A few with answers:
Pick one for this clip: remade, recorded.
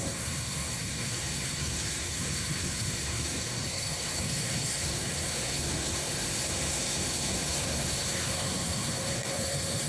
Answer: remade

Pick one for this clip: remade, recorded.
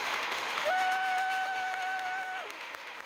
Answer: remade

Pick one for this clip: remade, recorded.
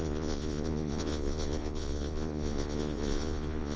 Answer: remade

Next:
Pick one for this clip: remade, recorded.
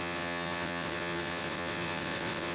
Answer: remade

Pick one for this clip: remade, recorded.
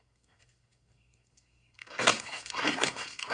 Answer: remade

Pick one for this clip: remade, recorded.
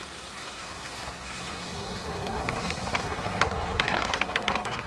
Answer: remade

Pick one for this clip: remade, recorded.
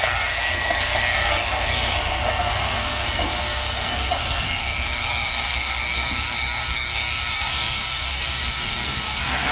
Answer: remade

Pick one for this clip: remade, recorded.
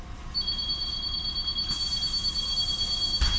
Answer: recorded